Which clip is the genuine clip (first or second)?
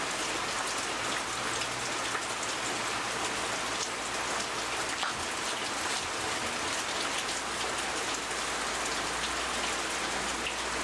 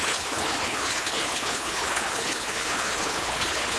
first